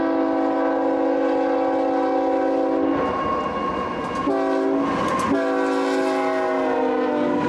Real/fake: real